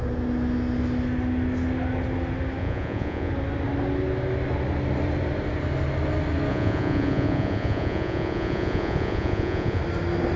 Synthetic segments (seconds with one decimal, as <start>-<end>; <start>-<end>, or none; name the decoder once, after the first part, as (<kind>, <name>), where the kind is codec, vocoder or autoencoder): 2.6-3.3 (vocoder, Vocos); 6.5-9.8